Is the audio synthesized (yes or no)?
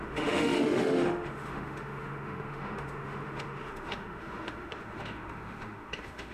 yes